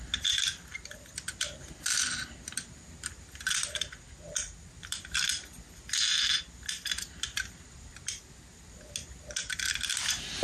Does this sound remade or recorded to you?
recorded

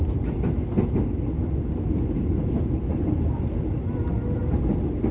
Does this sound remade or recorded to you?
recorded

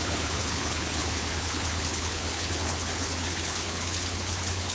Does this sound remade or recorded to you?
remade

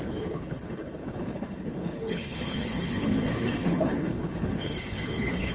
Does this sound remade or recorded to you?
remade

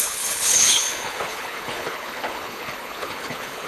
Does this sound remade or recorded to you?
remade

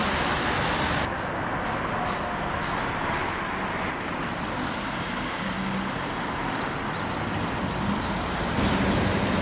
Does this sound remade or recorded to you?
recorded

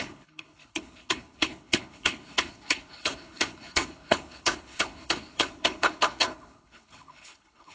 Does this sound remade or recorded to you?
remade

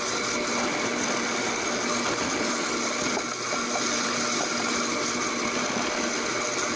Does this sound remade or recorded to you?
recorded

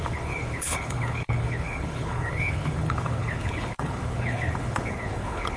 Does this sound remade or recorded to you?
remade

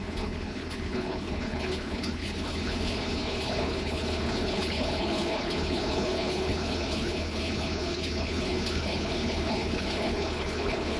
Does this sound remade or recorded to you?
remade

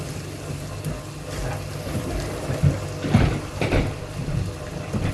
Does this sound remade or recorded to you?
recorded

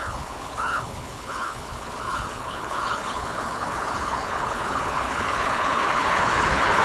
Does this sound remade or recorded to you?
remade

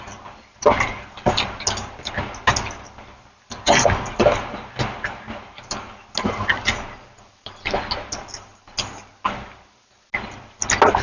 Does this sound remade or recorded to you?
recorded